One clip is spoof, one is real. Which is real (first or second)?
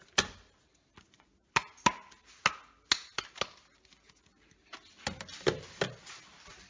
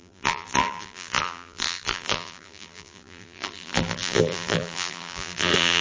first